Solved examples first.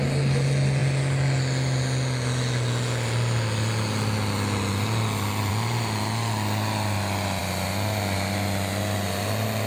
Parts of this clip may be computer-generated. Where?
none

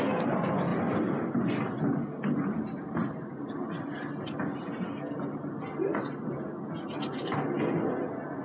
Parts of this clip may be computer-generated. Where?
0.7-1.8 (vocoder, BigVGAN v2)

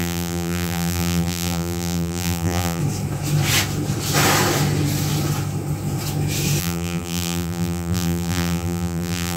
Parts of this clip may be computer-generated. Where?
0.0-2.8 (vocoder, BigVGAN v2); 6.6-9.4

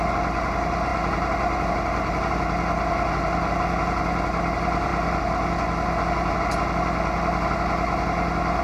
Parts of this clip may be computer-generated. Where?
none